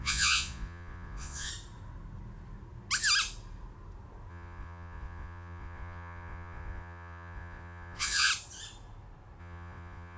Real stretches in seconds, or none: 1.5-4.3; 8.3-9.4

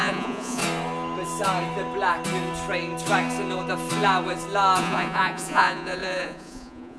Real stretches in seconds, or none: 0.6-4.8

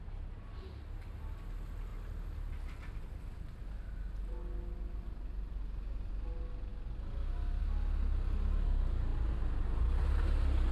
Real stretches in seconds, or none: 0.0-10.7

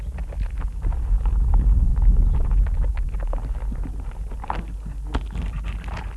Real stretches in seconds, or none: 0.0-6.2